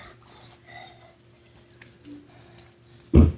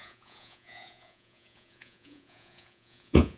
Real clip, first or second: first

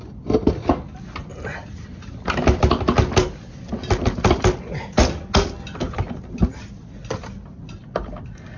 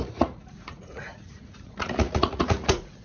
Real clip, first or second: first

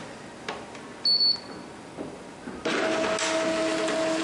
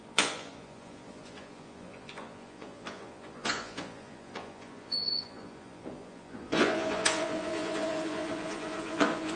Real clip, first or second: first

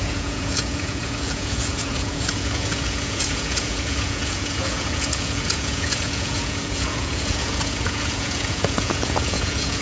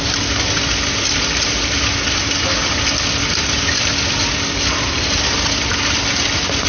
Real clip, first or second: second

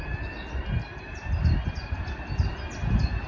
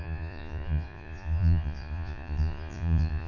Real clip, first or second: first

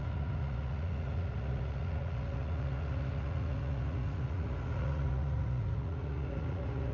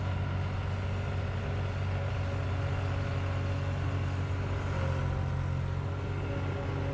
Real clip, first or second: second